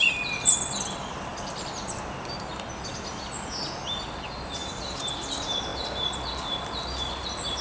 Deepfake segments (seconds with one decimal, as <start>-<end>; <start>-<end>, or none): none